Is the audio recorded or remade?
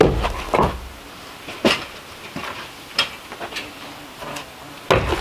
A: recorded